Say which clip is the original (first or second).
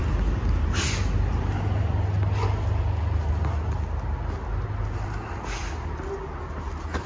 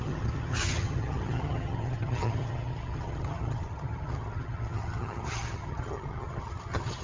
first